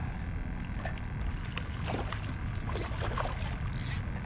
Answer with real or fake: real